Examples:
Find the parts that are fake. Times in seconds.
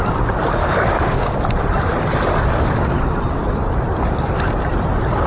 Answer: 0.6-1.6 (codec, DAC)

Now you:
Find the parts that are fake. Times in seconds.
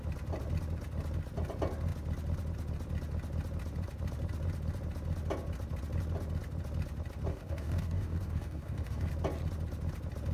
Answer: 7.3-9.1 (codec, DAC)